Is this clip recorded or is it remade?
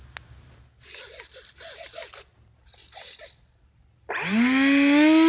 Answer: recorded